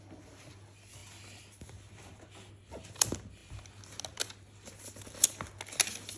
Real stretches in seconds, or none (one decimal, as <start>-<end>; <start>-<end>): 0.0-6.2